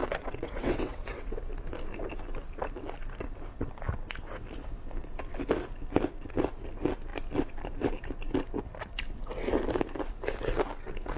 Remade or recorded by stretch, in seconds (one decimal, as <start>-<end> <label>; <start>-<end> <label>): 0.0-1.4 remade; 1.4-11.2 recorded